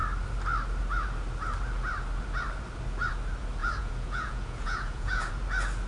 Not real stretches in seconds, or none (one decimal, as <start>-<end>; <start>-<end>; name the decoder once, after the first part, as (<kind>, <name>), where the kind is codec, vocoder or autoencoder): 3.6-5.3 (vocoder, Vocos)